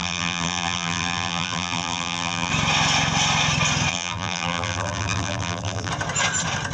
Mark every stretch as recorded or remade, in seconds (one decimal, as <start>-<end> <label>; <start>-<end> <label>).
0.0-2.5 remade; 2.5-3.9 recorded; 3.9-5.9 remade; 5.9-6.7 recorded